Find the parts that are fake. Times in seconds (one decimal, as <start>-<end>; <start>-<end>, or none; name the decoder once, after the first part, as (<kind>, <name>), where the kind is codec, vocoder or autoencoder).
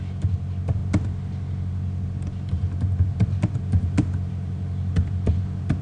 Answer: none